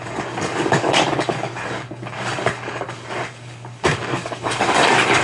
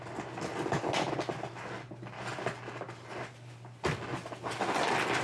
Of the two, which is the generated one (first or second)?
first